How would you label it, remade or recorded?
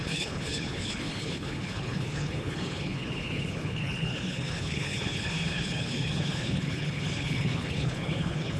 remade